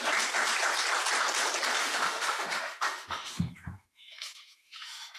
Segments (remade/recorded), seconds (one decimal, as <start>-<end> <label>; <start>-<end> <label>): 0.0-1.8 recorded; 1.8-5.2 remade